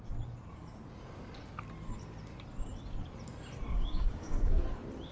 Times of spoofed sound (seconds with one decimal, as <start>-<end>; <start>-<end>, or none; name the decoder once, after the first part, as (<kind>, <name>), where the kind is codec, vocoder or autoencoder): 3.7-4.6 (codec, DAC)